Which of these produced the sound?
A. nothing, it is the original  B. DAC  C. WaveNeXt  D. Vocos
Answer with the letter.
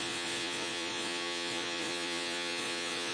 D